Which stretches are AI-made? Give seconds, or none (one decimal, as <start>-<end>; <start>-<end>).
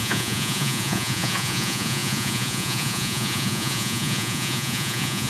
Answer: 0.0-5.3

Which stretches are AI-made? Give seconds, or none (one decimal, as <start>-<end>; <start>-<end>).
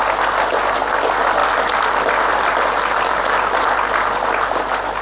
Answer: none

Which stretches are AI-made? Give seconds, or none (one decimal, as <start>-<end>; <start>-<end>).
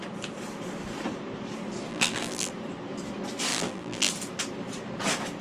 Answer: 1.9-2.5; 3.5-4.1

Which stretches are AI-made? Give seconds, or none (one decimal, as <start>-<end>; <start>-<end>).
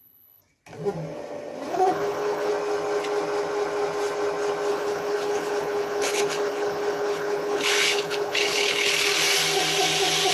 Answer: 0.0-0.4; 1.7-2.5; 4.7-8.9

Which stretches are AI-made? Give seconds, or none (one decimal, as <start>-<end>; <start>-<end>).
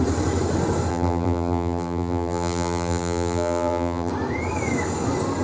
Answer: 0.9-4.1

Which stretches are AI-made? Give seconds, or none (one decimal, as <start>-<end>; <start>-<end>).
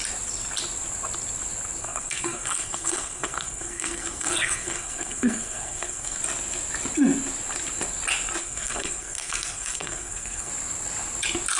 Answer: 1.8-6.2; 8.4-10.5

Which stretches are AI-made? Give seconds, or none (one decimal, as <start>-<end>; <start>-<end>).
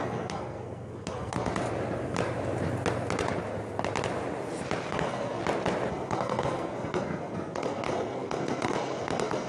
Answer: 0.0-1.5; 4.9-5.4; 5.9-9.5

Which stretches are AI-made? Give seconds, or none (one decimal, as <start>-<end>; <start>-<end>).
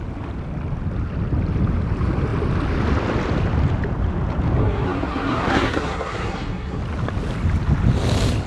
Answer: 4.6-6.8